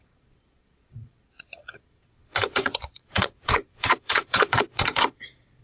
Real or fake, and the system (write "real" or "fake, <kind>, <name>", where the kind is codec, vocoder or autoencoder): fake, vocoder, Vocos